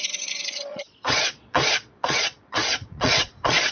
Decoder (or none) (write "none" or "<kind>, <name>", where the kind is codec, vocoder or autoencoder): vocoder, Vocos